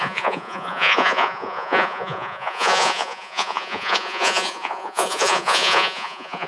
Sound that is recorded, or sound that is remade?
remade